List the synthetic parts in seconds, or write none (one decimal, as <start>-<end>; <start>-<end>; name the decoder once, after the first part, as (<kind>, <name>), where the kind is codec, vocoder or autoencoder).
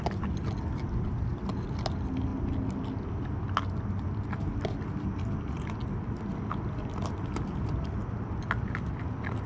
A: none